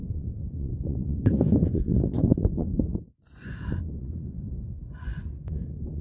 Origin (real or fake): fake